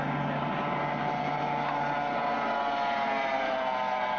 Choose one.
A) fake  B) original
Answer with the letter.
B